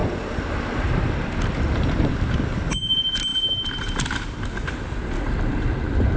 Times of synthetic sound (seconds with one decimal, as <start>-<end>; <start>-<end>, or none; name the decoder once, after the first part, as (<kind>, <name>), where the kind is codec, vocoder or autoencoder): none